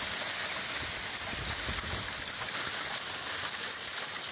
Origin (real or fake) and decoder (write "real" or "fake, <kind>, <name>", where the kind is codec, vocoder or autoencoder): real